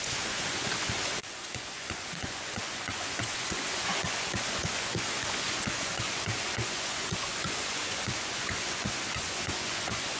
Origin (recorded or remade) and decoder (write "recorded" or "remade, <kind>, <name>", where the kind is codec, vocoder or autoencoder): remade, vocoder, Vocos